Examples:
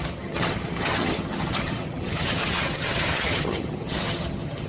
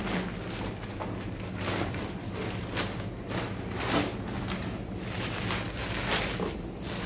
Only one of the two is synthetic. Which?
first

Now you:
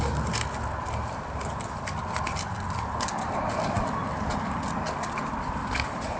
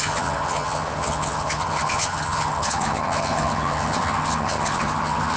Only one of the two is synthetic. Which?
second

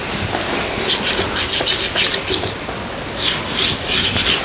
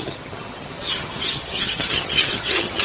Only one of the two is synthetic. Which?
second